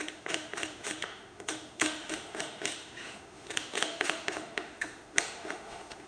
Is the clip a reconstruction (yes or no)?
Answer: yes